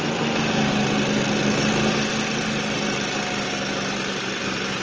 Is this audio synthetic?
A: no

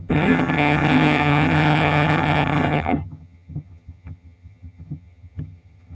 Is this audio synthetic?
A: yes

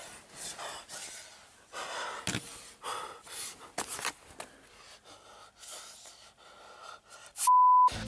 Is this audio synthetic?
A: no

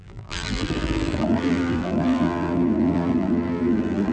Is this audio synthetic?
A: yes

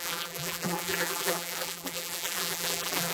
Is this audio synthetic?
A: yes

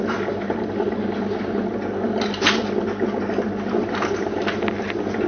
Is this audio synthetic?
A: no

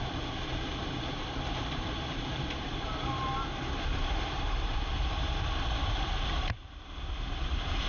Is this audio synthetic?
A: yes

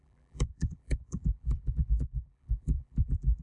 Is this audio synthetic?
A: yes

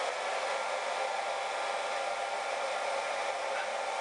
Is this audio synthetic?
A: no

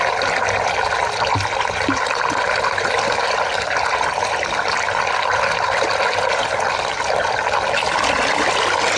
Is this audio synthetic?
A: no